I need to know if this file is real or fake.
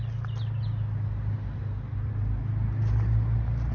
real